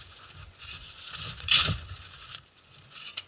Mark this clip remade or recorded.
remade